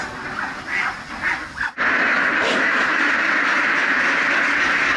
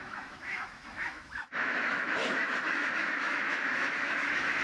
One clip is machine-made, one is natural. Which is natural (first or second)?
first